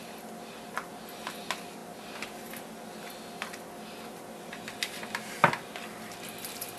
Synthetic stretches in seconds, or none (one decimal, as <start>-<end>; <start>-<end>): none